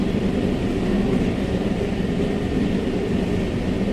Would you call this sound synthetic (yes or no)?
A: no